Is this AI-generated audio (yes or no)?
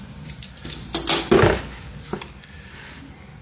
no